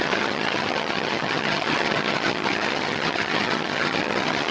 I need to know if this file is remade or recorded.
remade